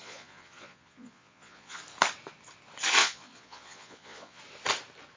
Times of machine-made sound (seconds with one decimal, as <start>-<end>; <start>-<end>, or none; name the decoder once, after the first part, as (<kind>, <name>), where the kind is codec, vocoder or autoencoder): 0.0-1.8 (vocoder, Vocos); 3.0-4.4